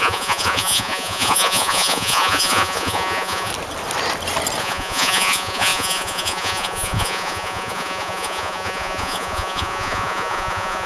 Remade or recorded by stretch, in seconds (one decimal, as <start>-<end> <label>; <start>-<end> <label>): 0.0-3.5 remade; 3.5-4.6 recorded; 4.6-10.9 remade